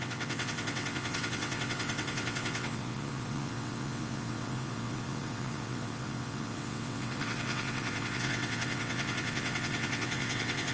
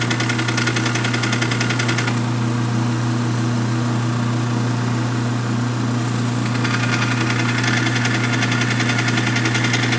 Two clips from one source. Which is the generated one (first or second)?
first